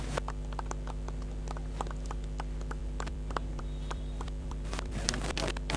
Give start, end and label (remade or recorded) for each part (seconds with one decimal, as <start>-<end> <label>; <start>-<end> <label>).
0.0-2.8 recorded; 2.8-5.8 remade